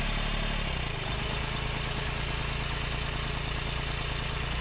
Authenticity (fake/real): real